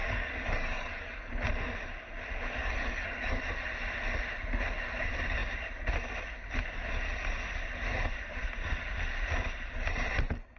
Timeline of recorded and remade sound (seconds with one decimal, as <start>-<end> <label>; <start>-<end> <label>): 0.0-1.3 remade; 1.3-2.6 recorded; 2.6-3.4 remade; 3.4-10.6 recorded